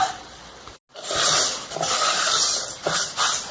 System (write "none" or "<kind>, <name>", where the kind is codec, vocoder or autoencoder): none